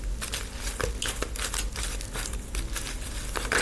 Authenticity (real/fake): real